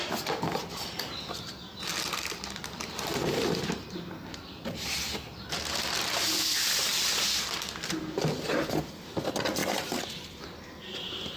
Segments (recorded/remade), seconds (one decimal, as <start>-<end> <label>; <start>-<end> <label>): 0.0-11.4 recorded